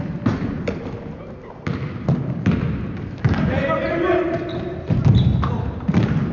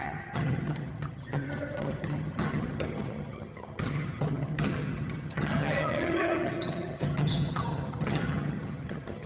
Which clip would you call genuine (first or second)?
first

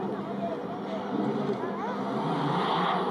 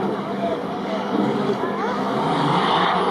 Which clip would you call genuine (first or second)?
first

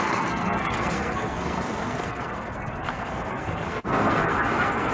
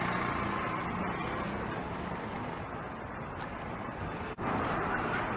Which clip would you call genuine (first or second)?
second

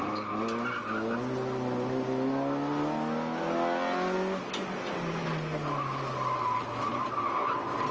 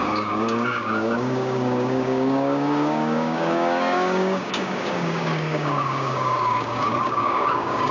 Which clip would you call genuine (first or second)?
first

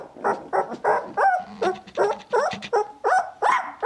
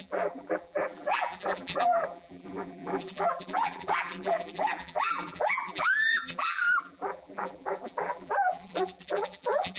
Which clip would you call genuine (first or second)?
first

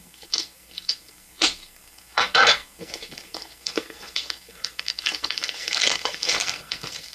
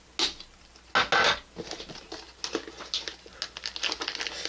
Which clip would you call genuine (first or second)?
second